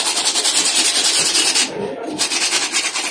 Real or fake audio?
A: real